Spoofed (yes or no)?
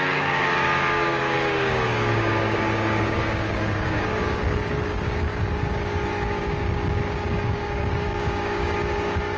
yes